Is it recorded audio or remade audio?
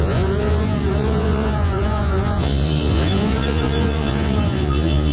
remade